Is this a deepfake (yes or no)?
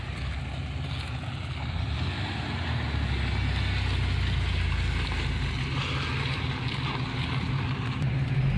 no